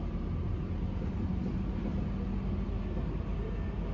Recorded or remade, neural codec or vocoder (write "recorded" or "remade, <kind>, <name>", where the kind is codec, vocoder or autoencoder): recorded